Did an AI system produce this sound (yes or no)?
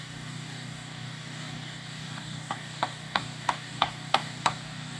yes